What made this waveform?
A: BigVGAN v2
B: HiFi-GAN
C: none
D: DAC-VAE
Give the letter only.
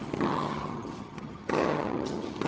B